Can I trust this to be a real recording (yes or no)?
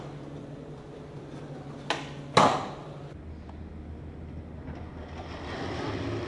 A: yes